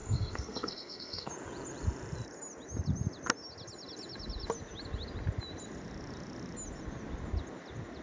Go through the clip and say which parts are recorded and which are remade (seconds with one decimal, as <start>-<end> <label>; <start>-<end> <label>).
0.0-1.3 remade; 1.3-8.0 recorded